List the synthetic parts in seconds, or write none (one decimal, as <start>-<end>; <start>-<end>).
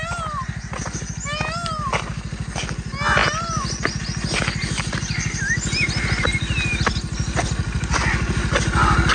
none